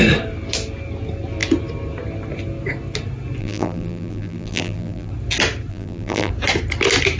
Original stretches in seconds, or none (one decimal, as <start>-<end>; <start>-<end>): 0.0-3.4; 5.1-5.7; 6.3-7.2